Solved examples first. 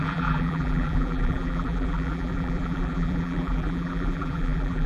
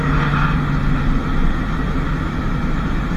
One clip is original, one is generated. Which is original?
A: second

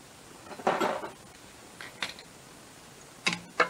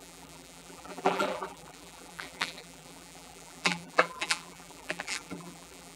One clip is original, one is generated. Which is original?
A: first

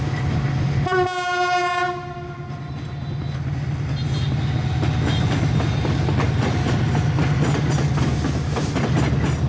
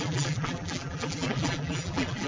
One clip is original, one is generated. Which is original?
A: first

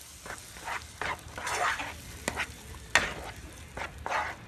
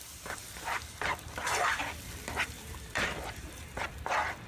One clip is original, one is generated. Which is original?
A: first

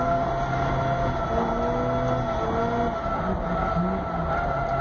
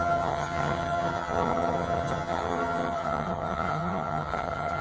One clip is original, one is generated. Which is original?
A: first